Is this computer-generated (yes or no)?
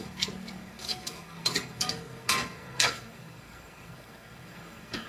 yes